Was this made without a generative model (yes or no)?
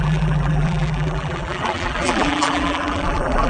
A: no